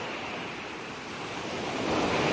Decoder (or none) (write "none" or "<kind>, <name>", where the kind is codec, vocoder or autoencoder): none